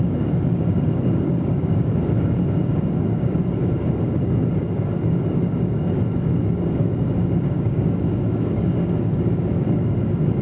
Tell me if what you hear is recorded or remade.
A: remade